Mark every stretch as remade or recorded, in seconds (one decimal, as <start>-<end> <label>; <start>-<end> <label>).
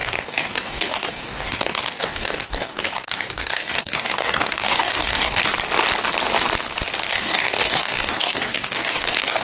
0.0-5.4 remade; 5.4-7.1 recorded; 7.1-9.4 remade